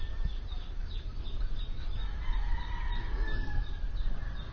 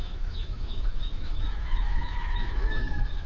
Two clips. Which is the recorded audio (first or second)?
first